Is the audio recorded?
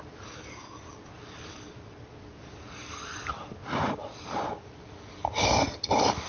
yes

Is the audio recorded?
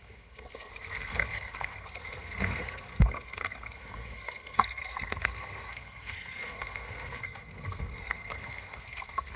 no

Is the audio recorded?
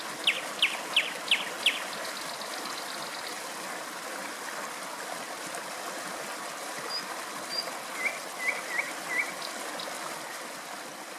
yes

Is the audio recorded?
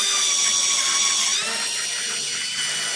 yes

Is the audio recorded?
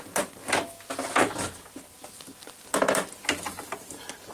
yes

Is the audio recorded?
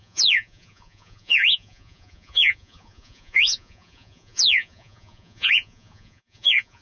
no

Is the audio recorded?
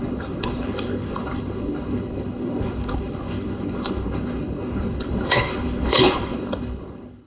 no